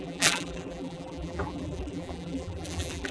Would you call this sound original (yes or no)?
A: no